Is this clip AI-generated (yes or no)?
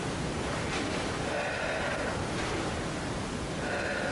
no